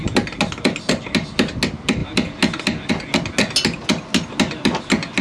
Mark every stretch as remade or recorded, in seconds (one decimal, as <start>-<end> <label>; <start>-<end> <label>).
0.0-5.2 recorded